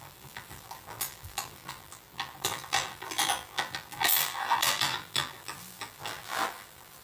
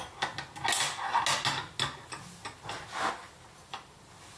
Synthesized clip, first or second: first